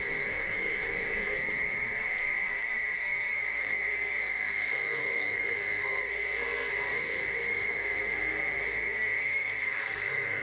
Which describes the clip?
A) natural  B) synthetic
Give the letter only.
B